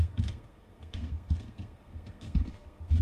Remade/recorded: remade